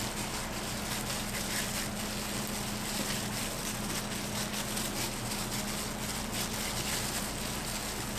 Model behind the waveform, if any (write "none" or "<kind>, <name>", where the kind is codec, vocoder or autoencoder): none